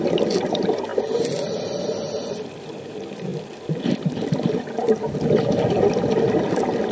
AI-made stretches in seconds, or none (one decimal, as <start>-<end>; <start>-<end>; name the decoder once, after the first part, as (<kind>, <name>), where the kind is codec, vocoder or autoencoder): 0.0-6.9 (vocoder, BigVGAN v2)